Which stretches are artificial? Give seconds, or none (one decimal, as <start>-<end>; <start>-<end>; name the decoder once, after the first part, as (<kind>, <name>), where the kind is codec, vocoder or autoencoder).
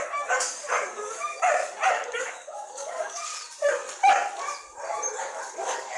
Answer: 0.0-1.3 (codec, DAC); 1.9-3.3; 5.2-6.0